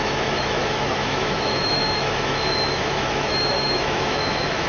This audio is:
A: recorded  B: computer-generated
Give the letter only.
B